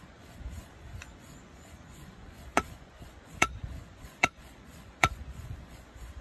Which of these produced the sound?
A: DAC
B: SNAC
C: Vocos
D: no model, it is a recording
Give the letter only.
C